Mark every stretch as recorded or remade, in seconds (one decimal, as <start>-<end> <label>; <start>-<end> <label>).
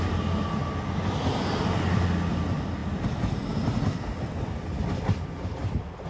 0.0-6.1 recorded